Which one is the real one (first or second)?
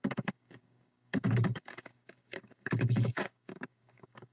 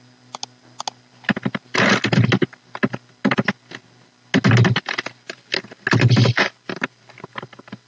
second